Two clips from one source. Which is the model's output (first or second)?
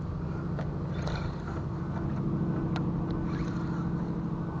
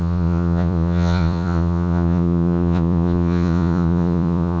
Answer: second